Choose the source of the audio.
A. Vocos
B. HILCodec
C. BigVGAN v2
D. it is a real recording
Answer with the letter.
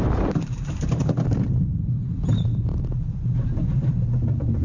C